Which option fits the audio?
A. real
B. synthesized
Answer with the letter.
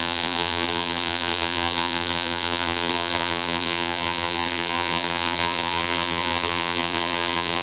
B